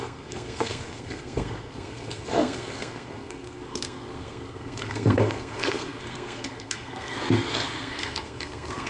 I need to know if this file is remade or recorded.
remade